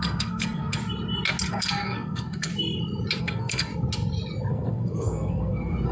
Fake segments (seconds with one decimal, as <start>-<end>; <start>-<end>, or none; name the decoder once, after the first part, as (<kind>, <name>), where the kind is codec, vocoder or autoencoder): 0.0-0.8 (codec, SNAC); 1.5-2.5; 3.2-3.7; 4.5-5.9